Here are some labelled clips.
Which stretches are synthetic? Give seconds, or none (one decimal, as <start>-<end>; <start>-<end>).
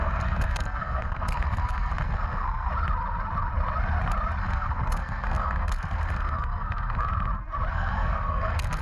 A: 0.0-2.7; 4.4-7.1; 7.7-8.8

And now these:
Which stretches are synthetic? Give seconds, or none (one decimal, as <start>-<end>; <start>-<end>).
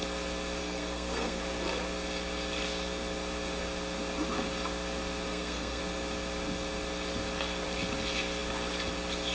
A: 0.6-1.4; 5.3-5.8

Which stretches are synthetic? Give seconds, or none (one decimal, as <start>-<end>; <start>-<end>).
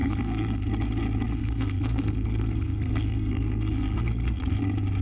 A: 0.0-0.6; 1.4-4.4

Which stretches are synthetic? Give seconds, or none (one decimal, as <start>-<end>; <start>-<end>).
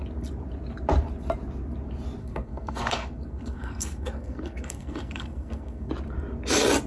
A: 2.2-5.9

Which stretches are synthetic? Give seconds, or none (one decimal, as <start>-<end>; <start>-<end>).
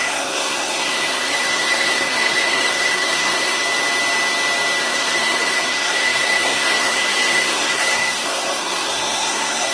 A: 0.0-3.6; 4.8-9.7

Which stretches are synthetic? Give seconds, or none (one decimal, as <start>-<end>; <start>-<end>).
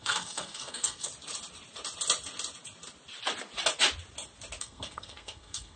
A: 0.0-1.1; 4.6-5.8